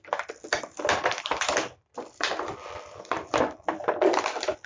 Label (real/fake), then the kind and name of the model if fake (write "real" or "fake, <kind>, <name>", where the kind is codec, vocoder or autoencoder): real